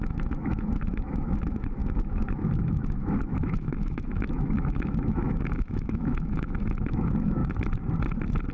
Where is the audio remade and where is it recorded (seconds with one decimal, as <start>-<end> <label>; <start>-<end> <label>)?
0.0-7.4 remade; 7.4-8.5 recorded